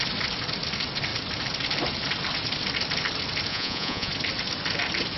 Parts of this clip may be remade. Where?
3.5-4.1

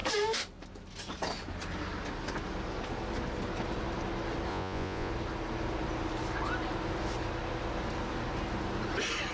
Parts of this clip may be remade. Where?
4.5-5.1

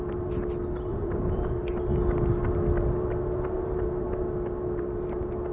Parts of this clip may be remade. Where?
0.9-1.5

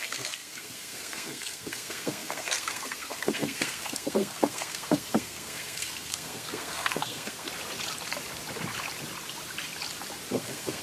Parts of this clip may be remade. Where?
0.0-7.5; 10.3-10.8

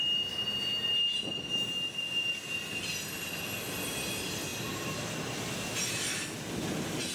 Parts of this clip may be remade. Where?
none

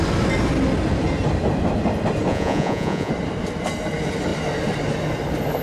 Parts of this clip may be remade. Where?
2.3-3.1

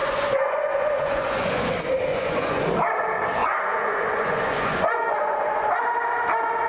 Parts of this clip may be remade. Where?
0.0-1.7; 2.1-2.6; 3.4-5.8

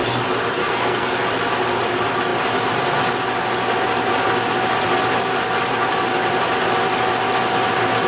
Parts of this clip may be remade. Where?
0.6-1.1